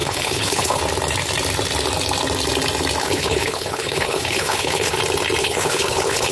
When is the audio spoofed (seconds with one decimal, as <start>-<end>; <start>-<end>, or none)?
0.0-0.8; 3.0-5.0; 5.4-6.3